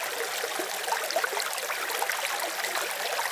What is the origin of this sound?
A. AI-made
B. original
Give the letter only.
B